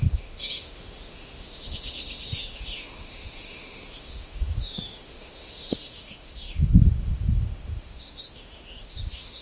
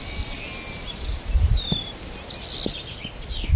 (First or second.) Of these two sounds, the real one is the second